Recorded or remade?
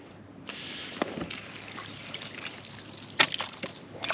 recorded